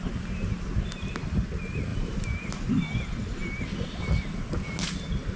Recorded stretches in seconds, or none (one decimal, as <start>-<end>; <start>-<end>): 0.0-5.4